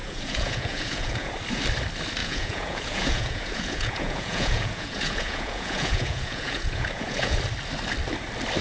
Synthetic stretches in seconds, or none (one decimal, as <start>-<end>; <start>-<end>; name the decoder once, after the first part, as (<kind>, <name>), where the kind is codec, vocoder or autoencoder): 0.0-1.3 (vocoder, Vocos); 2.2-7.4